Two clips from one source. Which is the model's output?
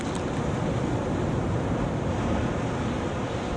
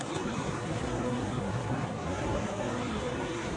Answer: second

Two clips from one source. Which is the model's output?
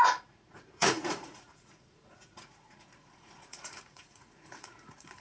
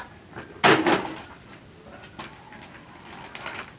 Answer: first